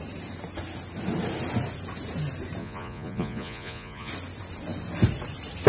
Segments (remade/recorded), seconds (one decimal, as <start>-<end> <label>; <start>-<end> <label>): 0.0-2.6 recorded; 2.6-4.1 remade; 4.1-5.7 recorded